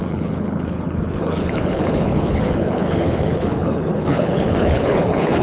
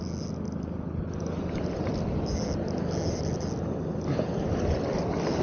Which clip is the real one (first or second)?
second